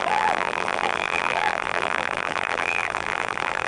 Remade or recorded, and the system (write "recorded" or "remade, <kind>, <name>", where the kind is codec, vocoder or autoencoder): remade, vocoder, BigVGAN v2